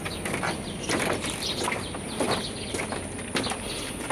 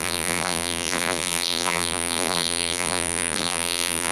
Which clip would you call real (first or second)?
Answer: first